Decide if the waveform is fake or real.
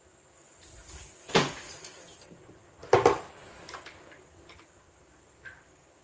real